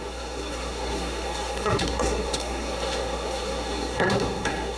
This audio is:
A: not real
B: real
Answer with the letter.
A